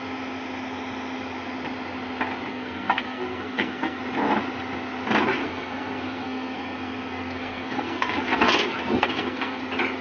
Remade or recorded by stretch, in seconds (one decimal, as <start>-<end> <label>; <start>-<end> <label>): 0.0-2.5 recorded; 2.5-4.0 remade; 4.0-5.4 recorded; 5.4-9.6 remade; 9.6-10.0 recorded